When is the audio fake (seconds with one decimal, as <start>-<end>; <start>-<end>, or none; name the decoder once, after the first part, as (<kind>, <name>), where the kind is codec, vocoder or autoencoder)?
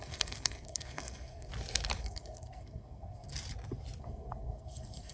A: 0.0-1.5 (codec, SNAC); 2.0-3.3; 4.0-5.1